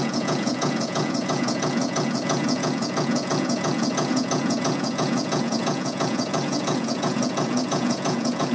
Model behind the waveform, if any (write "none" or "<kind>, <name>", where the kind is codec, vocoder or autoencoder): vocoder, Vocos